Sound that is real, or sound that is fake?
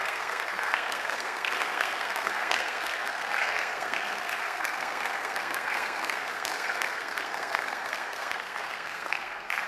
fake